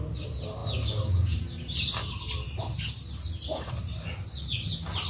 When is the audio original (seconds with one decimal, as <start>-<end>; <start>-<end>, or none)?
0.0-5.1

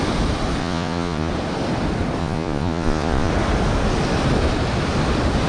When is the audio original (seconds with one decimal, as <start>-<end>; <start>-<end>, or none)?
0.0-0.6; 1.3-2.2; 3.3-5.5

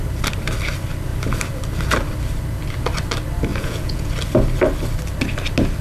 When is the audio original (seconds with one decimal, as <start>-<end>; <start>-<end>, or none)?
0.0-3.5; 4.1-5.8

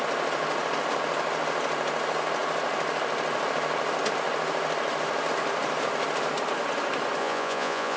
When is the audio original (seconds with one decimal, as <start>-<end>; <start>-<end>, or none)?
0.0-7.2

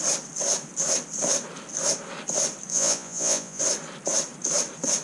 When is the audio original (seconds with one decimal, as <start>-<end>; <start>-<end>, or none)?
0.0-2.7; 3.6-5.0